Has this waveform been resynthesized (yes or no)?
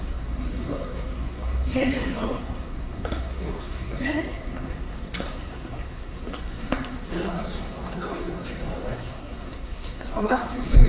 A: yes